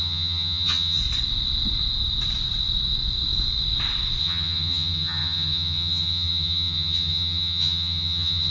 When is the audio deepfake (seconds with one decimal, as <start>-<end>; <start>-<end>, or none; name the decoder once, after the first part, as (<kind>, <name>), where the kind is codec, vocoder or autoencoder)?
0.0-1.0 (vocoder, HiFi-GAN); 4.2-8.5